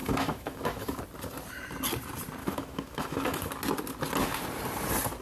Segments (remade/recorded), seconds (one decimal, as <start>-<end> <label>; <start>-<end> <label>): 0.0-1.0 remade; 1.0-2.4 recorded; 2.4-3.5 remade; 3.5-5.2 recorded